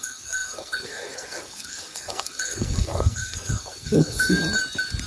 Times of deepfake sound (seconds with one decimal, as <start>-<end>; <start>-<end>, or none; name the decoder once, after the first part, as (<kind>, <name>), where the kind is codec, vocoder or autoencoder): 0.0-4.4 (codec, SNAC)